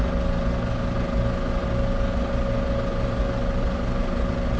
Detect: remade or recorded recorded